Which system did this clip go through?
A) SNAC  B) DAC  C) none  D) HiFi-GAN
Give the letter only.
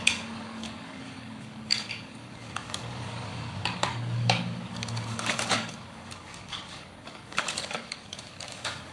B